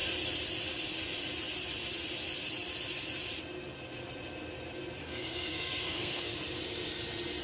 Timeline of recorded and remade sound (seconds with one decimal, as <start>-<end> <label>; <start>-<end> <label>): 0.0-5.0 recorded; 5.0-6.3 remade; 6.3-7.4 recorded